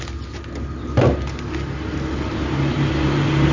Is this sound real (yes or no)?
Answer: yes